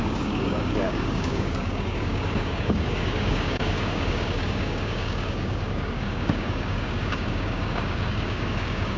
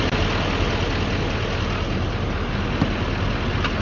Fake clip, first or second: first